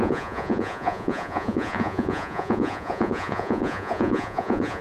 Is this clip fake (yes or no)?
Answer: yes